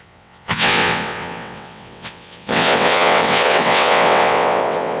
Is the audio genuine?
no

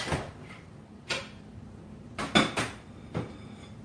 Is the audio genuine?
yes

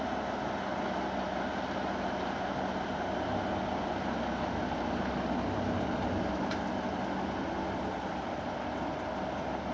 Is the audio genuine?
yes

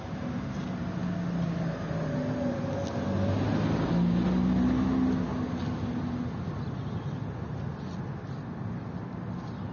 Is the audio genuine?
yes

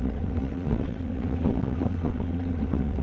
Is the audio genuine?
no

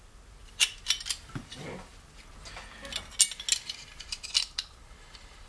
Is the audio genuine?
yes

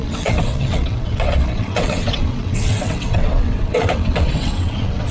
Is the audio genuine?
no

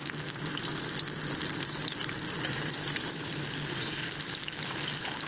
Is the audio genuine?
yes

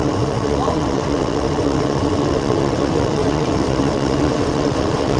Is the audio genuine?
no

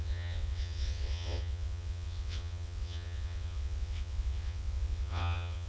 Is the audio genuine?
no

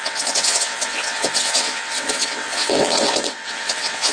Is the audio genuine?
no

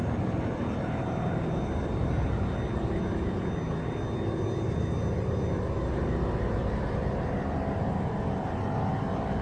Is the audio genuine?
yes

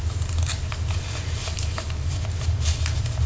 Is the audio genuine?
yes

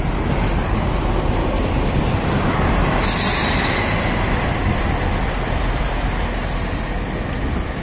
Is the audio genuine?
yes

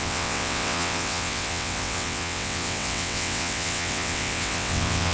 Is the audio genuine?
no